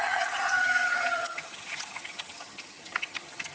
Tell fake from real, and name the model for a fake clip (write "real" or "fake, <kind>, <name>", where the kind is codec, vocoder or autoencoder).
fake, vocoder, HiFi-GAN